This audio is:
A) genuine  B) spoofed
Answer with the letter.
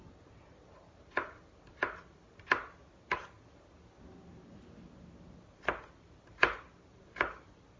A